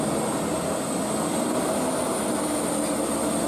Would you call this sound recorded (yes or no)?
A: yes